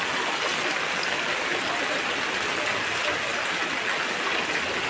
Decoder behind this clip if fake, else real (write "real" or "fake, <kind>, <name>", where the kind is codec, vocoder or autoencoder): real